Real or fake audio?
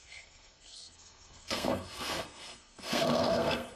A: fake